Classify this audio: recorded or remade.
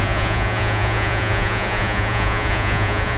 remade